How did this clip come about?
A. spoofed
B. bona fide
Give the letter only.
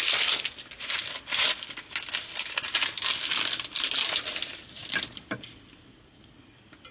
B